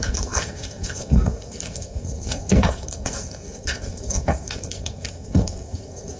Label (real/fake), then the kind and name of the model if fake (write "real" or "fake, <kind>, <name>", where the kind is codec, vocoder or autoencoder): fake, codec, SNAC